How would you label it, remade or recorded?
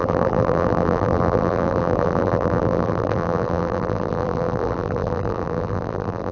remade